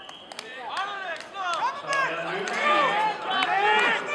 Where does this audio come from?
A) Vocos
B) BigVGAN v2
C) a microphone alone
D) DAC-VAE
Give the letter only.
C